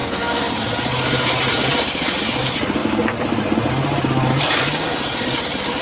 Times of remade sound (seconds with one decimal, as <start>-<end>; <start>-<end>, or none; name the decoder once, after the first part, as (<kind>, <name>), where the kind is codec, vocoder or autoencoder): 0.0-0.5 (codec, SNAC)